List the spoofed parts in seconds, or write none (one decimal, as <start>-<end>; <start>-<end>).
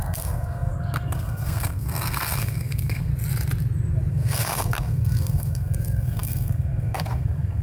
0.0-3.1; 4.1-7.6